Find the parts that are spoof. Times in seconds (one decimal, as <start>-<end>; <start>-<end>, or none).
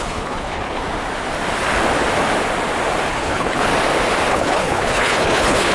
0.0-0.8; 3.1-3.7; 4.3-5.7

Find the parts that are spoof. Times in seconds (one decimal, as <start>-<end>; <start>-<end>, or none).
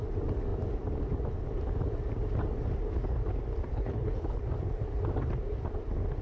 3.7-4.4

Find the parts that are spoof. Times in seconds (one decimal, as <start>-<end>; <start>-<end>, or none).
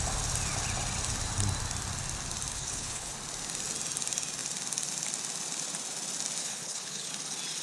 2.5-3.1; 6.4-7.1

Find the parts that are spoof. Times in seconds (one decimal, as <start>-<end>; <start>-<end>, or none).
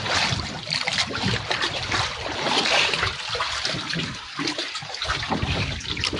none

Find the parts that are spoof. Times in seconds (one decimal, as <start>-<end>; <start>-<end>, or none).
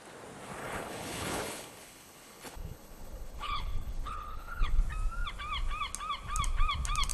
0.6-4.8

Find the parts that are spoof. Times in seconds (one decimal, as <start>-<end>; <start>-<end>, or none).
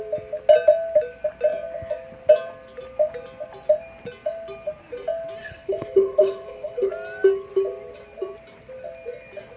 5.4-6.9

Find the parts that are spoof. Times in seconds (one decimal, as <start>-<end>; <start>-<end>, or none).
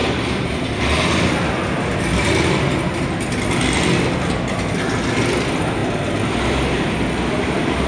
none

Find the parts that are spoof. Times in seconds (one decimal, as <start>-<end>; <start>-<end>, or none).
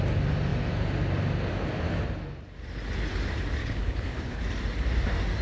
3.6-4.4